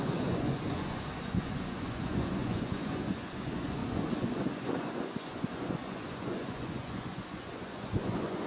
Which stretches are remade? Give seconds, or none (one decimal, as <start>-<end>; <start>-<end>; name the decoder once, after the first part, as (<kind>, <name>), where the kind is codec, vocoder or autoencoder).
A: 0.0-8.5 (vocoder, Vocos)